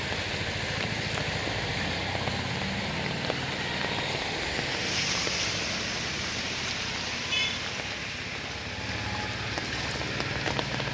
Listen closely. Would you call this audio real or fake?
real